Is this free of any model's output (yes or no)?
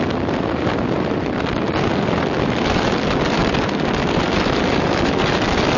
yes